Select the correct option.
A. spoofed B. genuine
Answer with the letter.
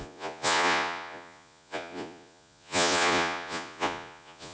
A